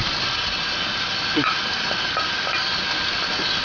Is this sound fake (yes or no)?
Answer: no